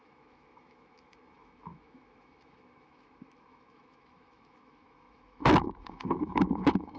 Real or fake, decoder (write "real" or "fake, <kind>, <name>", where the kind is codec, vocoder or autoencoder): fake, autoencoder, DAC-VAE